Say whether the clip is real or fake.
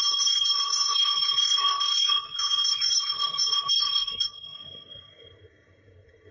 fake